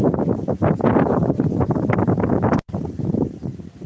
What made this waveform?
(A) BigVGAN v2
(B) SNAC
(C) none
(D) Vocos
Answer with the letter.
A